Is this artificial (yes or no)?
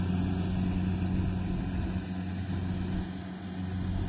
no